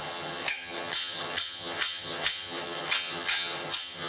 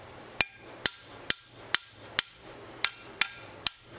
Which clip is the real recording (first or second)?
second